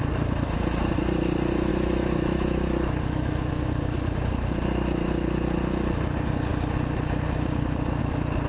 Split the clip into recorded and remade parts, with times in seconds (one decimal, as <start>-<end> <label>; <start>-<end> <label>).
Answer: 0.0-1.7 recorded; 1.7-3.5 remade; 3.5-8.5 recorded